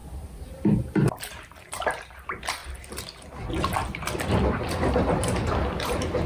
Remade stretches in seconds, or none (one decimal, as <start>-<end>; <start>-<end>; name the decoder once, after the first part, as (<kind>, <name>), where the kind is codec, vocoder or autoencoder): 0.8-2.6 (vocoder, BigVGAN v2); 4.8-6.3